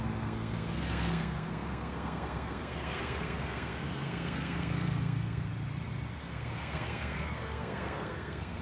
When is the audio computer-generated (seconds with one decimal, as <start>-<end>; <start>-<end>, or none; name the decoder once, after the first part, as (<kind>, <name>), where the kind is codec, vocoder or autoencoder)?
0.0-5.5 (codec, SNAC); 6.3-8.6